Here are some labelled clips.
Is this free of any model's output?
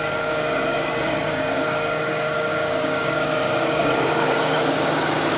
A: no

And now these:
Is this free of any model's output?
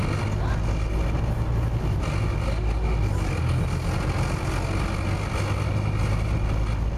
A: yes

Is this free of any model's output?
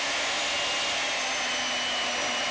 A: yes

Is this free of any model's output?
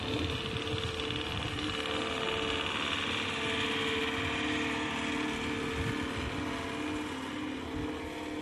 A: yes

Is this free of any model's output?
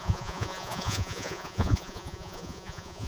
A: no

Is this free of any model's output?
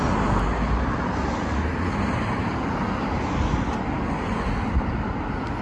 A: yes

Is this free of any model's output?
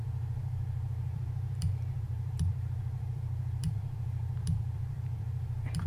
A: no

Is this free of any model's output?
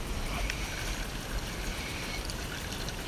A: yes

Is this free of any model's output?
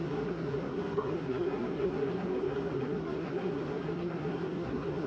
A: no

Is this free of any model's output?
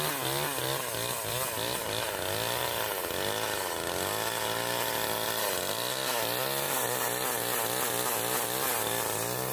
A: yes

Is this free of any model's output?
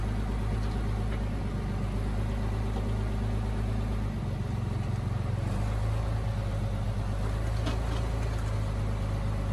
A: yes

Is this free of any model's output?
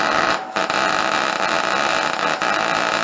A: yes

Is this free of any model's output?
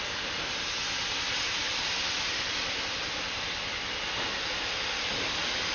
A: yes